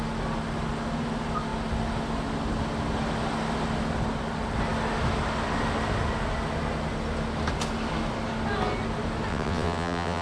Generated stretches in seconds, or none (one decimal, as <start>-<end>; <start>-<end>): 9.3-10.2